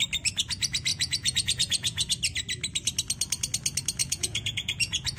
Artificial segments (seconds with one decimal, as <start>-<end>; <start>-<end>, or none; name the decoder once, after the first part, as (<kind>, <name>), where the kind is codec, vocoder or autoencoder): 0.9-2.1 (vocoder, Vocos); 4.0-5.2